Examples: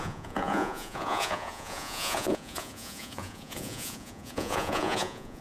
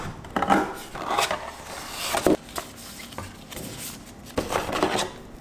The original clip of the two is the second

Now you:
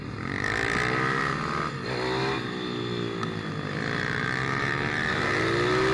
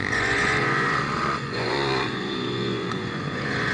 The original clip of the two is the first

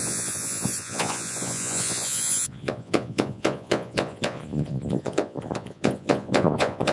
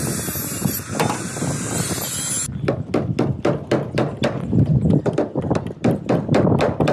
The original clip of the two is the second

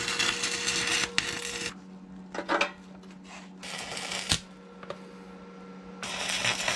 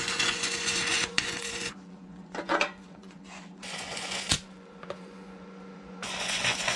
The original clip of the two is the first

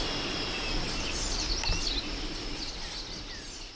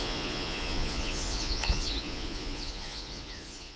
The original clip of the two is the first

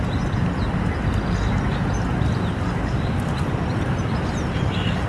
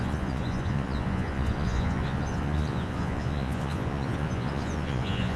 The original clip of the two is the first